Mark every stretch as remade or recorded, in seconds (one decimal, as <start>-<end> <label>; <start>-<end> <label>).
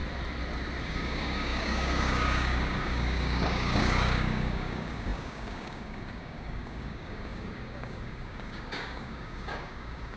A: 0.0-0.8 recorded; 0.8-10.2 remade